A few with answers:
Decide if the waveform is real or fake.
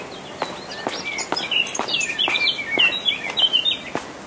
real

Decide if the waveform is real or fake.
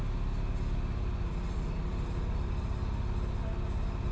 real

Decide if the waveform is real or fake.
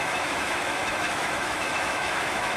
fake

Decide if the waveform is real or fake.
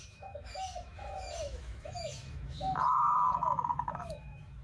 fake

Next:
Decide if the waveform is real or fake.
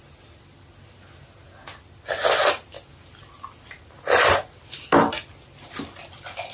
real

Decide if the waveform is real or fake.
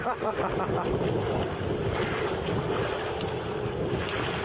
real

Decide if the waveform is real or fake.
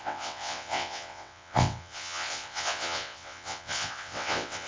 fake